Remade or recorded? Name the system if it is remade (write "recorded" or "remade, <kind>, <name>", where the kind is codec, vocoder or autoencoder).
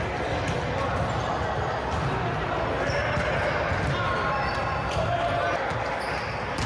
recorded